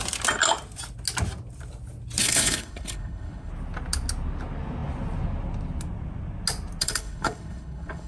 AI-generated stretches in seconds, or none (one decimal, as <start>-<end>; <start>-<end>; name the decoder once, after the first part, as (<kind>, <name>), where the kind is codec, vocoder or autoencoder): 2.2-3.5 (codec, HILCodec); 6.8-8.1